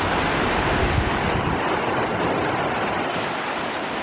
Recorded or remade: recorded